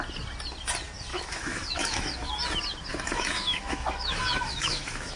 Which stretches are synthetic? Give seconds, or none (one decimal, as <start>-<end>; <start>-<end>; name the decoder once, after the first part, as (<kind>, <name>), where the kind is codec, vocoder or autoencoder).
1.1-2.3 (autoencoder, DAC-VAE); 2.9-5.2